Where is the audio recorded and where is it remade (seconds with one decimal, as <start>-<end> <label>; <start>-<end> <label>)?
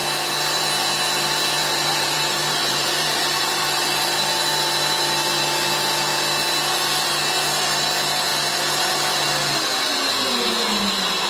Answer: 0.0-1.6 recorded; 1.6-4.0 remade; 4.0-11.3 recorded